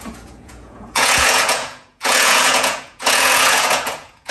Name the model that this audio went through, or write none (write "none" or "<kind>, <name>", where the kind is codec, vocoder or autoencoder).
vocoder, Vocos